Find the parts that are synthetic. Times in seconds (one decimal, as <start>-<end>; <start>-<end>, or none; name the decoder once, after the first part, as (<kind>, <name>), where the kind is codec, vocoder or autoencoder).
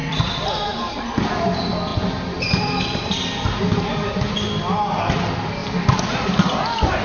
0.0-1.0 (vocoder, BigVGAN v2)